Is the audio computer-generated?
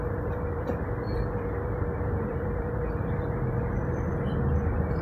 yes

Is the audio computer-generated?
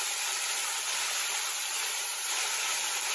no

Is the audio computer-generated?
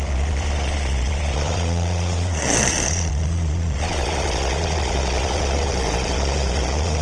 yes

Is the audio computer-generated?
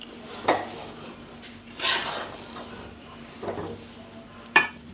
yes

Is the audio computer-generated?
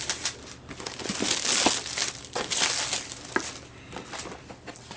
no